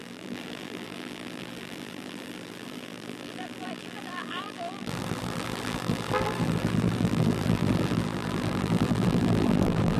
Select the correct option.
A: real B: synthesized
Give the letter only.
B